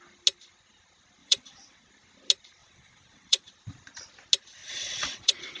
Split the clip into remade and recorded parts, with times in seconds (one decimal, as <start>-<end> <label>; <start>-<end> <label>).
0.0-1.2 recorded; 1.2-1.9 remade; 1.9-2.6 recorded; 2.6-3.5 remade; 3.5-4.6 recorded; 4.6-5.6 remade